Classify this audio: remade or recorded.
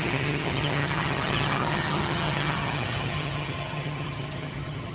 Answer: remade